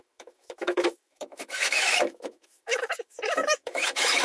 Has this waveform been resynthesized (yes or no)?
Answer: yes